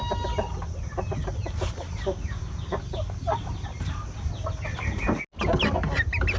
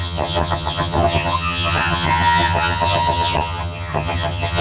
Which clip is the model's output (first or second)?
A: second